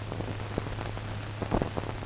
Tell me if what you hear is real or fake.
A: real